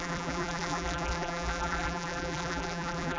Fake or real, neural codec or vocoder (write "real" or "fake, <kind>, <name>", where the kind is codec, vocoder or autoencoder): fake, vocoder, BigVGAN v2